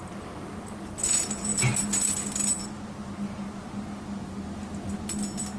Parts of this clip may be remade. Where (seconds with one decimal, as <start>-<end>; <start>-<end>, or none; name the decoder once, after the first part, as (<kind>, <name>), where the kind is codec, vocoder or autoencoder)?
none